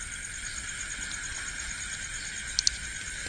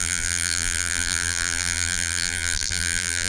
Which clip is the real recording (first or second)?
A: first